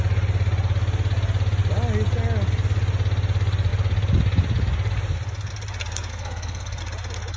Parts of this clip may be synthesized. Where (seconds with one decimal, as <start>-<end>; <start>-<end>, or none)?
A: 6.1-6.8